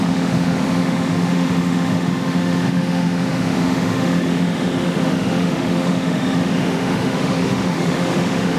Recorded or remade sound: remade